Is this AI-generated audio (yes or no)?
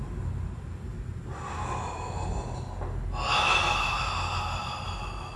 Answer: no